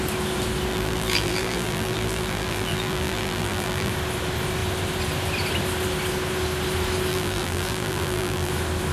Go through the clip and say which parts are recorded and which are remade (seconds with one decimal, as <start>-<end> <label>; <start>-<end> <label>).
0.0-0.7 recorded; 0.7-3.9 remade; 3.9-7.1 recorded; 7.1-8.5 remade; 8.5-8.9 recorded